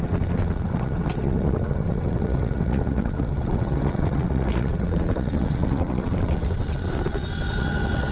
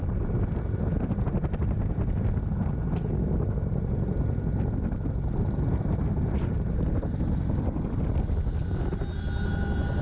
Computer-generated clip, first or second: first